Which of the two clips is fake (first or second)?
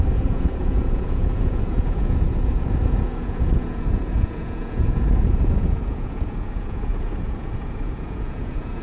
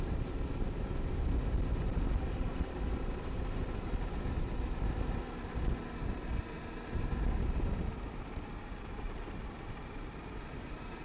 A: first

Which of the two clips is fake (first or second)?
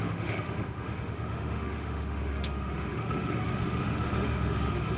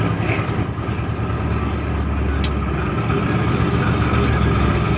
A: first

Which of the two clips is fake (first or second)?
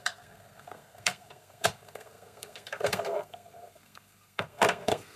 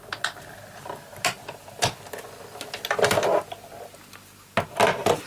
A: first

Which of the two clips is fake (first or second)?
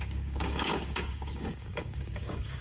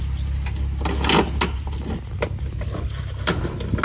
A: first